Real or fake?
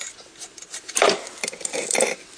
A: real